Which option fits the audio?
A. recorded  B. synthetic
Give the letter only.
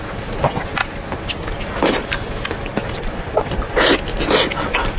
A